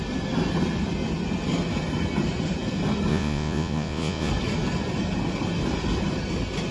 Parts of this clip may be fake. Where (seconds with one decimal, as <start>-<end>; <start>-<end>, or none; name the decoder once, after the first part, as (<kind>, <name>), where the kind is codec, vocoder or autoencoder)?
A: 3.1-4.3 (vocoder, Vocos)